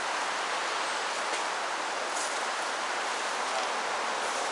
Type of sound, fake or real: real